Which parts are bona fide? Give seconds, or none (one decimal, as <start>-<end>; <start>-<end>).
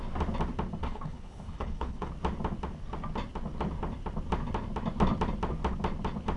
0.0-0.8; 2.1-6.4